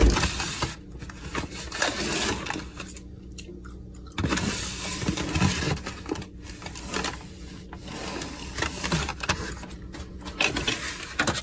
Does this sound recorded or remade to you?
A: recorded